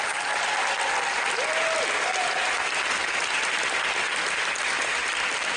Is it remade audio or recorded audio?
recorded